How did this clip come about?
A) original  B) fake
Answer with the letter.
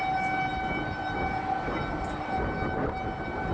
A